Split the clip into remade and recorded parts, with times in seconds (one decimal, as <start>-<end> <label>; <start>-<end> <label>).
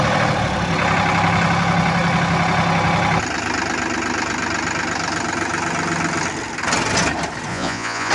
0.0-7.5 recorded; 7.5-8.1 remade